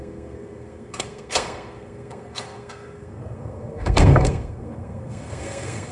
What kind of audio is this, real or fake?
fake